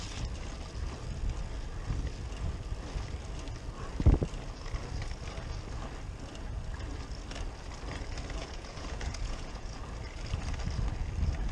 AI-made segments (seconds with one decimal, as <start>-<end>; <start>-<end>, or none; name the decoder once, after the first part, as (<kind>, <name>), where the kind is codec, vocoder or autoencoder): 8.4-9.8 (vocoder, Vocos)